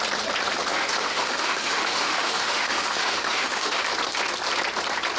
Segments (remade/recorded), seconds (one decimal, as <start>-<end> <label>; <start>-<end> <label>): 0.0-0.7 recorded; 0.7-3.8 remade; 3.8-5.2 recorded